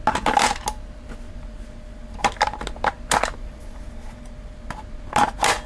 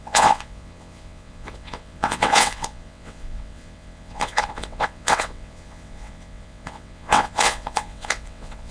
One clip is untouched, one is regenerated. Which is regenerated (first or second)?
second